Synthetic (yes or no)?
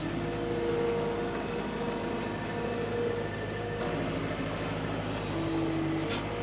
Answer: no